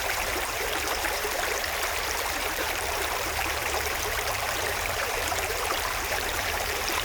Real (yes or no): no